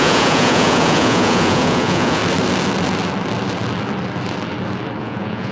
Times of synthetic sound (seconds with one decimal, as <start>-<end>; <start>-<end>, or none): 0.0-2.2; 5.0-5.5